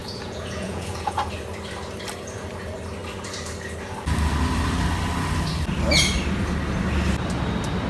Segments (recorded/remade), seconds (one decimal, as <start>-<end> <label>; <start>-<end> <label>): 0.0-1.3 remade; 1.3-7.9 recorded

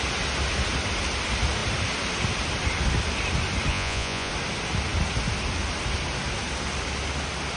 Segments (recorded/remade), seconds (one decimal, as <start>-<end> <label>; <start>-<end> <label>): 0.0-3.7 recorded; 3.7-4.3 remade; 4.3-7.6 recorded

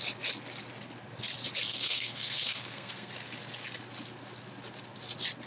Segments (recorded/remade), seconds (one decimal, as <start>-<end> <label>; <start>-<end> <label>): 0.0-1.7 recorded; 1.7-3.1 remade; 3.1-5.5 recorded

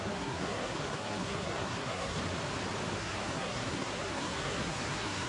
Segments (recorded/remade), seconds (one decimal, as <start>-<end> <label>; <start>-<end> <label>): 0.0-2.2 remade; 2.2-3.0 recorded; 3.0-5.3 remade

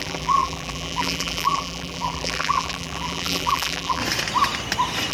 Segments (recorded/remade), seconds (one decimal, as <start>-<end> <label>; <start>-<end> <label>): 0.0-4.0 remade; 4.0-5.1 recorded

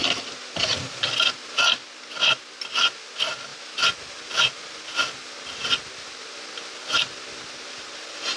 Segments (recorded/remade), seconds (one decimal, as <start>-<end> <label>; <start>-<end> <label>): 0.0-8.4 recorded

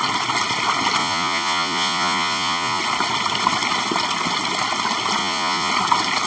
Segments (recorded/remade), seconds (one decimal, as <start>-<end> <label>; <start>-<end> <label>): 0.0-1.0 recorded; 1.0-2.8 remade; 2.8-5.2 recorded; 5.2-5.7 remade; 5.7-6.3 recorded